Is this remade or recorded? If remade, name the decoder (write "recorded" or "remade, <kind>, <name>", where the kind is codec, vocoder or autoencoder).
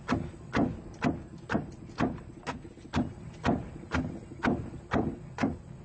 remade, vocoder, BigVGAN v2